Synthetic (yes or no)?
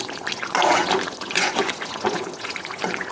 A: yes